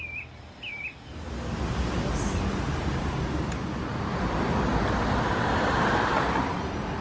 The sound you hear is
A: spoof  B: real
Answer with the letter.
B